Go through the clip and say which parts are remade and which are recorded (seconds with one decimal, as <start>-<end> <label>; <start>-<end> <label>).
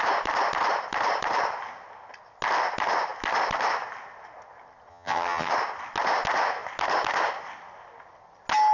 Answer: 0.0-4.9 recorded; 4.9-5.5 remade; 5.5-8.7 recorded